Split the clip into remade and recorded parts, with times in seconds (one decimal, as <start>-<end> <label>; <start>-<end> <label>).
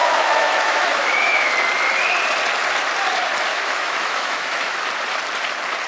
0.0-1.5 remade; 1.5-3.5 recorded; 3.5-4.8 remade; 4.8-5.9 recorded